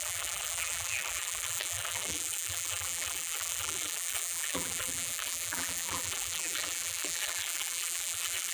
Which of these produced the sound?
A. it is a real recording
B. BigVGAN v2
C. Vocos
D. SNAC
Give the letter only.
B